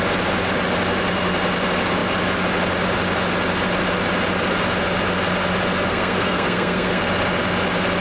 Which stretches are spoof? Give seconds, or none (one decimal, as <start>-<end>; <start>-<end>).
5.9-7.0